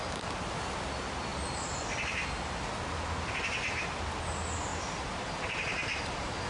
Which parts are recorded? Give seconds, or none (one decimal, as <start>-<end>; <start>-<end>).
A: 0.0-4.7